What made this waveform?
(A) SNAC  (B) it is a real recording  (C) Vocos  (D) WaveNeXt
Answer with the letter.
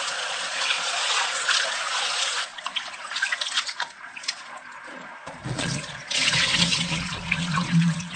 C